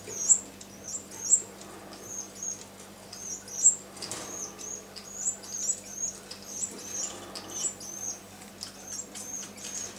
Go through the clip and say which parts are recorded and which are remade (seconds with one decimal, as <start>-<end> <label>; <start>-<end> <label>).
0.0-10.0 recorded